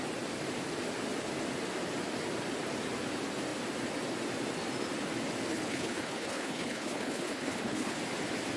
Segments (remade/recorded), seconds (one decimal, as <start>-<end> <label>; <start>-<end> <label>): 0.0-5.5 recorded; 5.5-8.0 remade; 8.0-8.6 recorded